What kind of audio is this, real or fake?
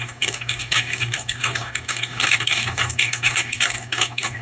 fake